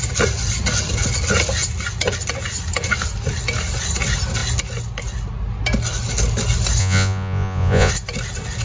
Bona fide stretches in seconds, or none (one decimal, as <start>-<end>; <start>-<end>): 0.0-6.8; 7.9-8.6